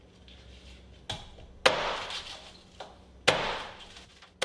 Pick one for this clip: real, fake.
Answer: real